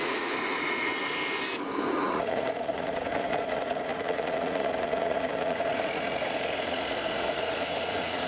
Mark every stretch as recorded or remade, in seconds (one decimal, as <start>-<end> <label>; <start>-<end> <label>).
0.0-0.9 remade; 0.9-1.9 recorded; 1.9-8.3 remade